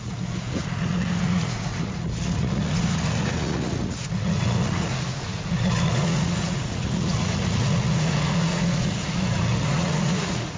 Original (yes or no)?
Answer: no